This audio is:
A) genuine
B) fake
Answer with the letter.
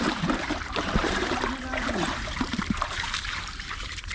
B